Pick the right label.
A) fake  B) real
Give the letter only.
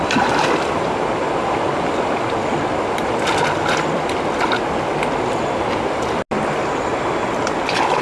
B